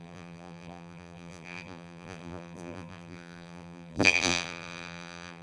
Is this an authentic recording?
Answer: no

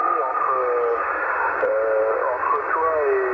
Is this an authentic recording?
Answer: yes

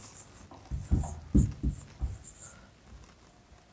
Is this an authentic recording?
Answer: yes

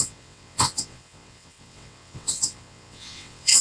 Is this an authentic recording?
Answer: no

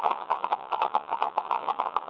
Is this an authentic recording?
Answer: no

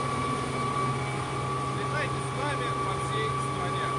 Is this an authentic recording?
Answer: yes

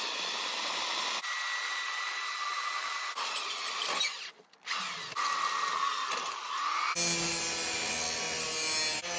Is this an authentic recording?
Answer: yes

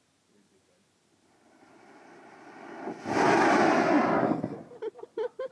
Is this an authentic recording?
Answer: yes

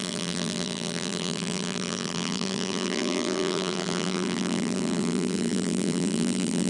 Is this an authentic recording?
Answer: no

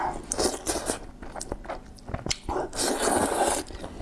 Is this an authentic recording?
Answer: yes